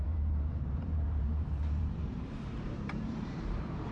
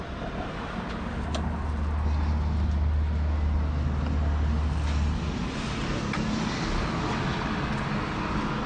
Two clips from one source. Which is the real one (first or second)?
second